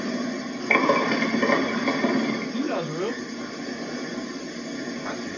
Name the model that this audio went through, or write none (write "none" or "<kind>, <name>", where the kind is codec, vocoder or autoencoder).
none